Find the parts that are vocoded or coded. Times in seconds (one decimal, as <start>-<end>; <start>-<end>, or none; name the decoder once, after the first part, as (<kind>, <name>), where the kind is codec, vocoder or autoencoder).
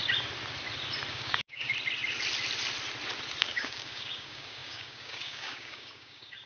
1.1-1.7 (codec, DAC); 3.4-6.5